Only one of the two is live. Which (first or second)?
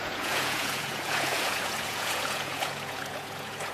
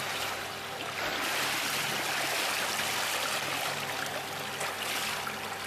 second